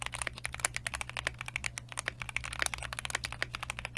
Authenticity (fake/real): real